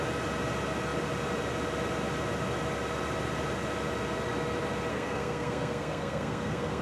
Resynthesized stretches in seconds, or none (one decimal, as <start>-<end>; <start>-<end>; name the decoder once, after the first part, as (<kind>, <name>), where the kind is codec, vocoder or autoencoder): 4.9-6.8 (codec, SNAC)